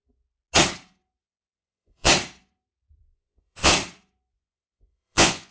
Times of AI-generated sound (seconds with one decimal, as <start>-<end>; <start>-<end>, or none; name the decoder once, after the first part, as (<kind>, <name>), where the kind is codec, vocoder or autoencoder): 1.2-2.1 (vocoder, Vocos); 3.0-3.7; 4.3-5.5